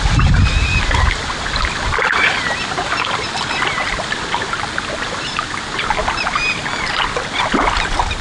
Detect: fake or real real